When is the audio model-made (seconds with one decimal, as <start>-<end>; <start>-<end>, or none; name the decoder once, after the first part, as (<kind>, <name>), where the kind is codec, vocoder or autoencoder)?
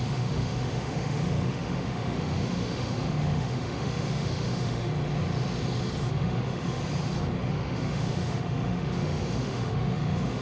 0.0-4.9 (autoencoder, DAC-VAE); 6.1-6.8; 7.5-10.4